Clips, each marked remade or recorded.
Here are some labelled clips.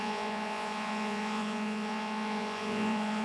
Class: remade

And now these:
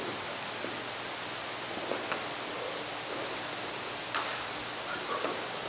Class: recorded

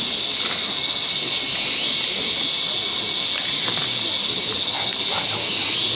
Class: recorded